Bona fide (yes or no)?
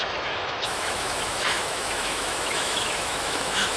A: no